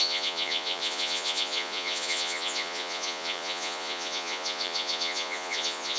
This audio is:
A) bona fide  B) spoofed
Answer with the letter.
B